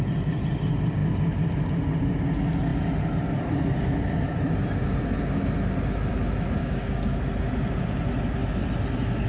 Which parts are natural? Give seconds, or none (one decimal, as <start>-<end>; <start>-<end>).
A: 0.0-6.6; 7.2-9.3